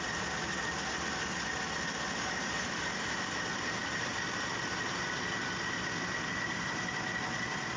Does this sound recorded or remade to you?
recorded